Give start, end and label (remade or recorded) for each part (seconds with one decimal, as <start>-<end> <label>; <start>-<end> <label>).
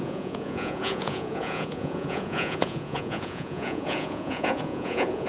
0.0-5.3 remade